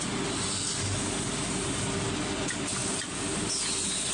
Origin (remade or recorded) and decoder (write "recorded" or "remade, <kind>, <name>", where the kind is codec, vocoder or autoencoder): recorded